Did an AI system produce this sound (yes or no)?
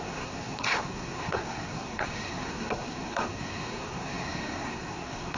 yes